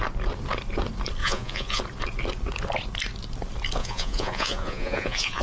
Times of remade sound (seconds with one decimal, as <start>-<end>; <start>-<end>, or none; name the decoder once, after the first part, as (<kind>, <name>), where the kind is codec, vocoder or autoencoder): 1.2-1.8 (vocoder, Vocos); 3.8-5.4